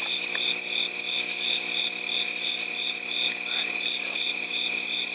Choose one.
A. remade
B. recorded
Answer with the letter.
B